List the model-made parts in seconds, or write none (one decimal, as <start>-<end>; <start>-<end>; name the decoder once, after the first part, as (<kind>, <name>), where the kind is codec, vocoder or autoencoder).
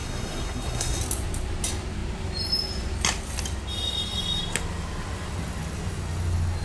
0.0-1.0 (codec, SNAC)